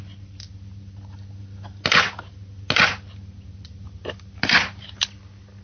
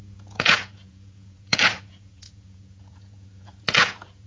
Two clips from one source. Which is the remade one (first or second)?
second